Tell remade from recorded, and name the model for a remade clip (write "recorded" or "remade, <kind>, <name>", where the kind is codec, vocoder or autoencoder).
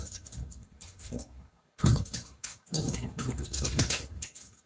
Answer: remade, codec, SNAC